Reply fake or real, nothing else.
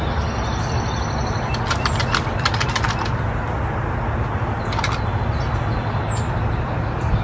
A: real